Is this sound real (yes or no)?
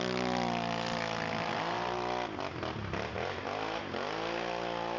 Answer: yes